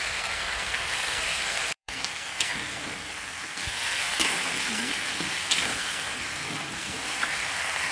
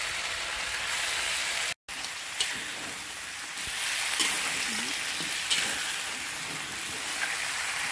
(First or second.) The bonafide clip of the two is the second